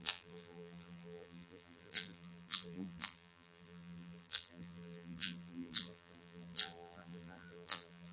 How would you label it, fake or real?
fake